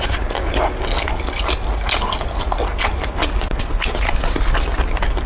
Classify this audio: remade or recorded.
recorded